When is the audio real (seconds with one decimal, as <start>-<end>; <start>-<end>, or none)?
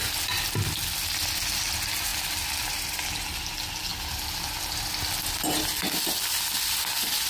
0.0-7.3